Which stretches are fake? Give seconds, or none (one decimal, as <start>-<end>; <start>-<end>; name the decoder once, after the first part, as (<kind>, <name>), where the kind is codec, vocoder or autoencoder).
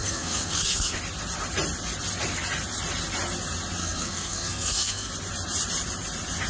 0.0-1.0 (codec, SNAC); 3.8-5.1